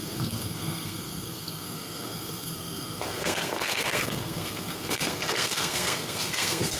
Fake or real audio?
fake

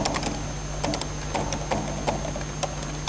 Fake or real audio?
real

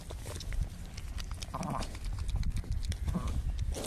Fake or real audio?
real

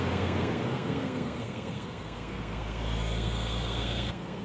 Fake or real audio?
fake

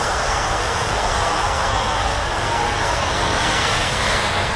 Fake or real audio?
fake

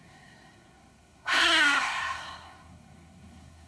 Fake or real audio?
fake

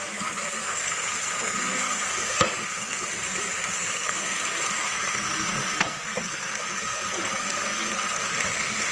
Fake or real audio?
fake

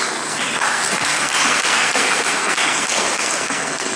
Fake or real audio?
fake